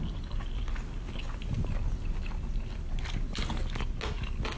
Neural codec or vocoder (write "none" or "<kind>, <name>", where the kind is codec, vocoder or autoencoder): none